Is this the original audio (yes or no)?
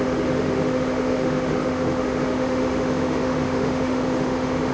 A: no